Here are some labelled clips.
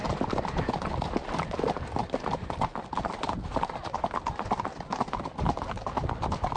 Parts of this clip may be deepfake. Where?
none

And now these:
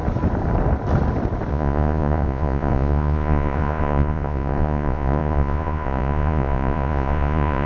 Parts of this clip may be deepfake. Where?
1.5-7.7 (vocoder, Vocos)

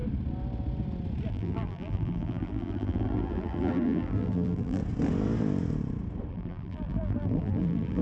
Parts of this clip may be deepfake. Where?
1.3-4.8 (vocoder, BigVGAN v2); 6.3-8.0